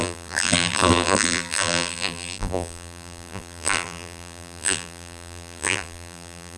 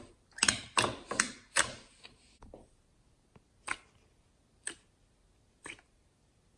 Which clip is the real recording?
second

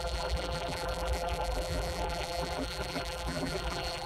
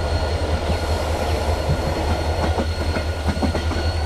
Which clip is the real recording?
second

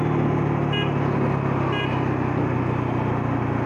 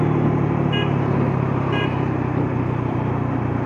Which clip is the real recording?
first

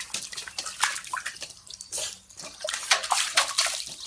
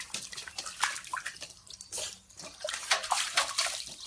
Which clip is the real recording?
first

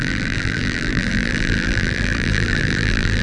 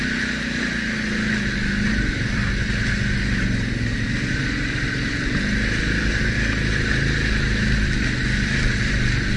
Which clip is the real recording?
second